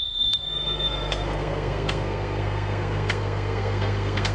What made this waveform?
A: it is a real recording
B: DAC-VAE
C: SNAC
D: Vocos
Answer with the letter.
C